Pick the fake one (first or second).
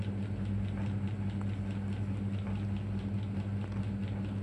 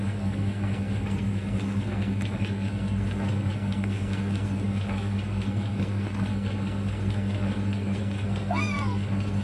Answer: second